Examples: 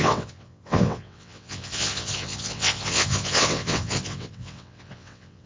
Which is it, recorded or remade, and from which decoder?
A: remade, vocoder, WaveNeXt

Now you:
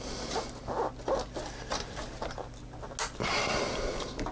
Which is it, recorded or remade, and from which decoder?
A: recorded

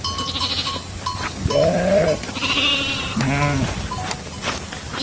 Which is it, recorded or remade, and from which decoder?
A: recorded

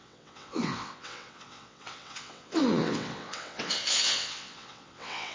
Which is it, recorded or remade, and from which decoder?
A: remade, vocoder, WaveNeXt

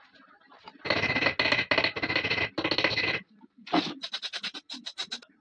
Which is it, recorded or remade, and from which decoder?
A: recorded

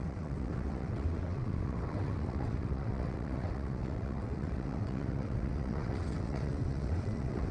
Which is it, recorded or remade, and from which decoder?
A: remade, vocoder, WaveNeXt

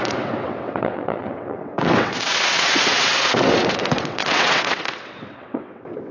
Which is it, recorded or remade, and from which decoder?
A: remade, vocoder, WaveNeXt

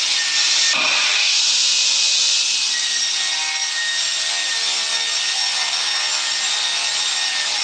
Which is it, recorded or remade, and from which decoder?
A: recorded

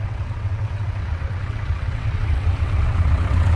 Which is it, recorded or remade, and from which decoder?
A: remade, vocoder, WaveNeXt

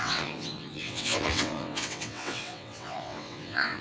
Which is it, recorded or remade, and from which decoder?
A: remade, vocoder, WaveNeXt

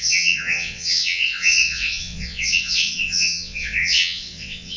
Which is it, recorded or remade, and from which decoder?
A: remade, vocoder, WaveNeXt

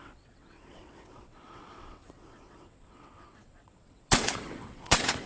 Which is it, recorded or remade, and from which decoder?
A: remade, vocoder, WaveNeXt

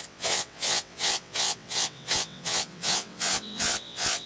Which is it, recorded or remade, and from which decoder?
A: remade, vocoder, WaveNeXt